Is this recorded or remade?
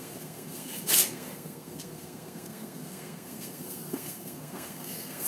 remade